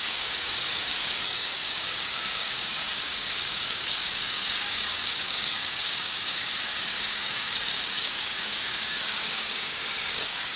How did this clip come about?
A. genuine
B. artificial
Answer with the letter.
B